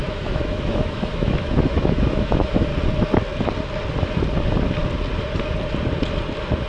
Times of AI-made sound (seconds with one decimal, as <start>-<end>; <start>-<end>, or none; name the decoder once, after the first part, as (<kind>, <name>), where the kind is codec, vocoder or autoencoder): 0.0-2.7 (autoencoder, DAC-VAE)